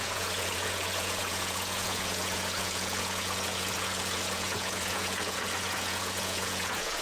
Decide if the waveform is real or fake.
fake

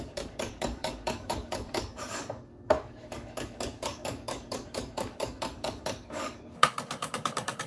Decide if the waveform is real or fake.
fake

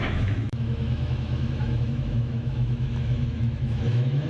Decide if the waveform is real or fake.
fake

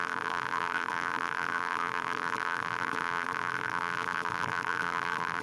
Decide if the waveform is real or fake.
fake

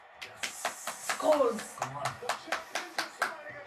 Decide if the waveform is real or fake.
real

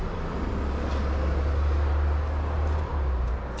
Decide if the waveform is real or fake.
real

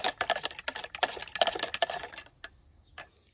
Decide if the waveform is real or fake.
real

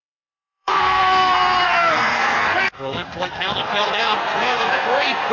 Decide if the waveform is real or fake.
fake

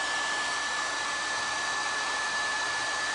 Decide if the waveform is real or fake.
fake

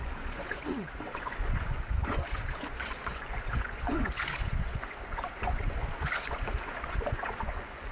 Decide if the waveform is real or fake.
fake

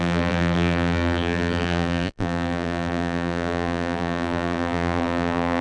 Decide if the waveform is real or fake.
fake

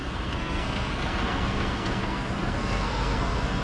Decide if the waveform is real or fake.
fake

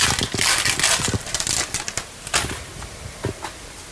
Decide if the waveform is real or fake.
real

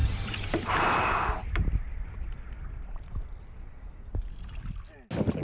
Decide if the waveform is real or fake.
real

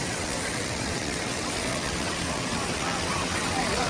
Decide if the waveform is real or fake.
fake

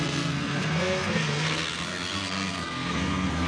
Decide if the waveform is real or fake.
fake